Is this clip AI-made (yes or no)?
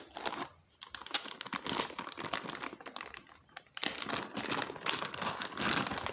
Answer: no